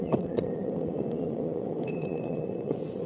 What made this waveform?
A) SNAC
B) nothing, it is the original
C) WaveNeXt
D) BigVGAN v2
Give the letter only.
C